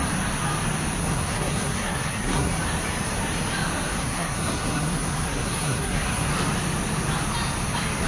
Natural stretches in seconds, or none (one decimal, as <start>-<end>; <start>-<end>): 0.0-1.0; 2.5-4.0; 6.3-8.1